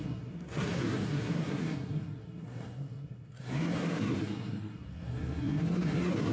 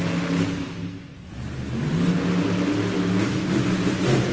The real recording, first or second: second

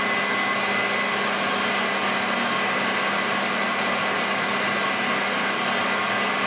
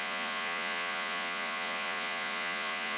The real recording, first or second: first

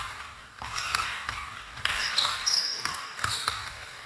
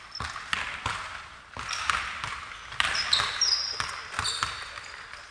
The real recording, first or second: second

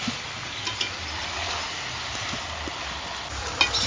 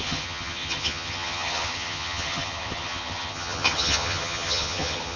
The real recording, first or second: first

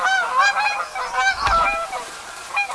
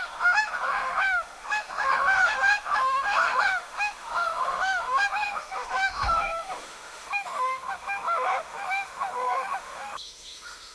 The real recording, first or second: first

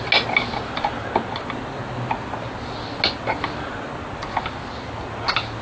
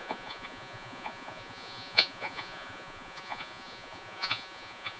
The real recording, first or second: first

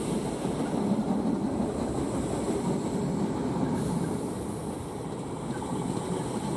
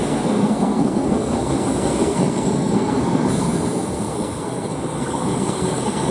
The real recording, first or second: first